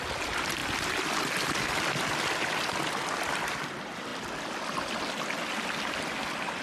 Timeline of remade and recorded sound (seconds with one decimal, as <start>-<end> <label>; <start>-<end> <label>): 0.0-6.6 recorded